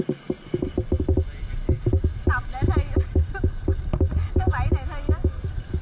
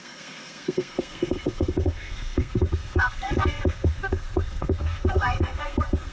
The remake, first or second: second